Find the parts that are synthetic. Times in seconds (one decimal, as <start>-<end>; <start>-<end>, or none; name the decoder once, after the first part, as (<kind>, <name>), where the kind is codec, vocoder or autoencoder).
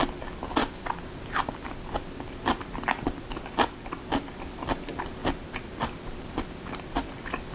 none